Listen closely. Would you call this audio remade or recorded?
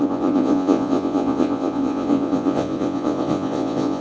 remade